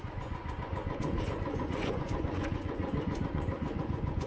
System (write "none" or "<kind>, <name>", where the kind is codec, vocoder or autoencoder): vocoder, Vocos